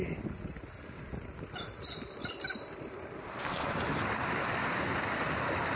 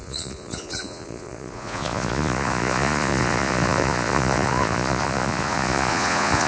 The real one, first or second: first